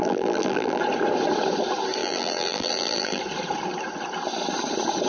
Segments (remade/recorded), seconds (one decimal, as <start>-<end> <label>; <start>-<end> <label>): 0.0-0.8 remade; 0.8-2.0 recorded; 2.0-3.2 remade; 3.2-5.1 recorded